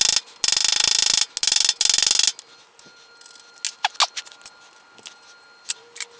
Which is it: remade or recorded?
recorded